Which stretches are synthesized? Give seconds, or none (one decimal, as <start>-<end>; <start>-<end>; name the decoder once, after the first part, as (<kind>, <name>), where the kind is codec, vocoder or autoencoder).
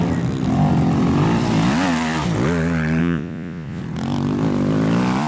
3.0-3.8 (vocoder, Vocos)